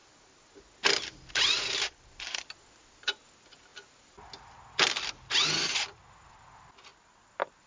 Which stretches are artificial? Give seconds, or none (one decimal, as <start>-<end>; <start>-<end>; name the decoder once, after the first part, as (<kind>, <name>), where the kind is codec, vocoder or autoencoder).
none